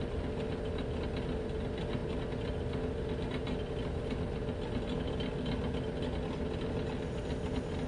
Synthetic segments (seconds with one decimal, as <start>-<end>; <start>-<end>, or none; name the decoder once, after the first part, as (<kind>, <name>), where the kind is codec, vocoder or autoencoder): none